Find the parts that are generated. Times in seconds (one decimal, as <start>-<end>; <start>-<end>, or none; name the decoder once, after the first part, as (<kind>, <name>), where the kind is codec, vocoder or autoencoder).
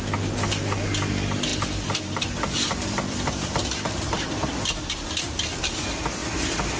1.5-5.6 (vocoder, BigVGAN v2); 6.2-6.8